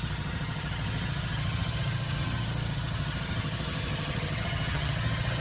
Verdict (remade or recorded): remade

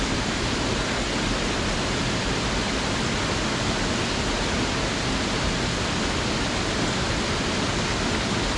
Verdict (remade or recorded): recorded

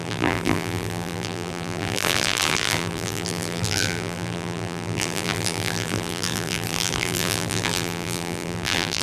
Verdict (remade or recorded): remade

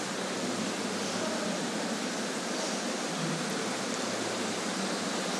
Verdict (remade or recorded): recorded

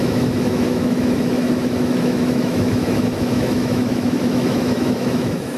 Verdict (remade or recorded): remade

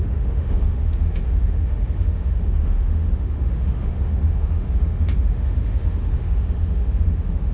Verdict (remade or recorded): remade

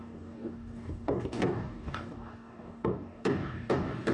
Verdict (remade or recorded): remade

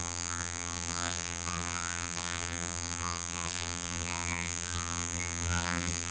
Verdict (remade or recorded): remade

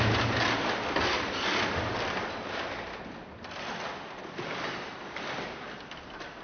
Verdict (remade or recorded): recorded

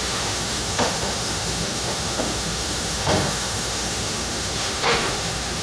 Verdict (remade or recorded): remade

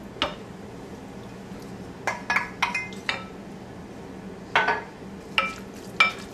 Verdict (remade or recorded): recorded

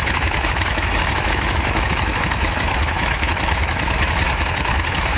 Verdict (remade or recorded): remade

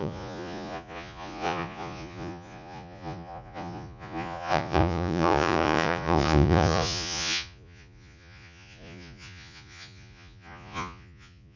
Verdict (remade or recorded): remade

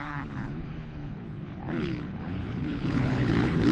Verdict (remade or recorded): remade